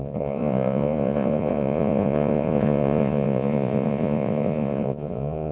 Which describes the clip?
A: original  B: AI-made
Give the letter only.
B